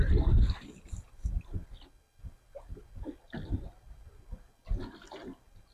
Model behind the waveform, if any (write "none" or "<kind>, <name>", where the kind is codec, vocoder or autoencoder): none